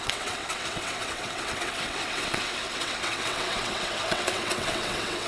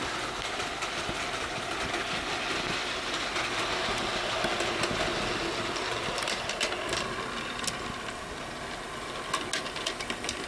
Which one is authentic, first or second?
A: second